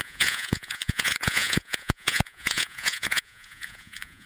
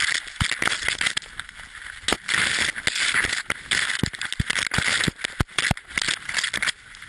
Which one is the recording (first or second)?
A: second